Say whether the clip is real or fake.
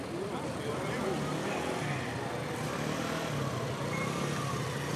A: real